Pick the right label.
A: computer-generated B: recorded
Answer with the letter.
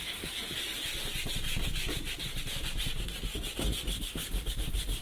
B